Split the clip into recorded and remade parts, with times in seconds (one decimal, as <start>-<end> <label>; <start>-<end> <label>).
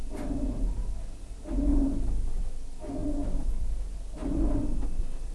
0.0-1.7 recorded; 1.7-2.5 remade; 2.5-3.0 recorded; 3.0-3.6 remade; 3.6-4.2 recorded; 4.2-5.3 remade